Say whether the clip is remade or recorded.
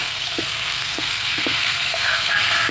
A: remade